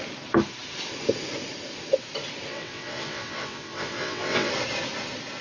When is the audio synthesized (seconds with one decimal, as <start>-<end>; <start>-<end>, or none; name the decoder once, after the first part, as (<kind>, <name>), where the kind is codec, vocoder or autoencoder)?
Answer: 2.5-4.5 (vocoder, WaveNeXt)